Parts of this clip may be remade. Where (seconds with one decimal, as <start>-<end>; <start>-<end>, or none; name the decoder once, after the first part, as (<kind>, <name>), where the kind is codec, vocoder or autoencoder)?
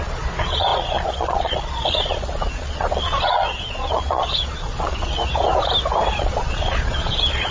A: 0.0-5.2 (vocoder, Vocos); 6.2-7.5